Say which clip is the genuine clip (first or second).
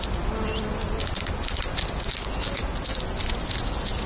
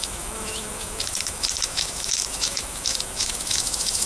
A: first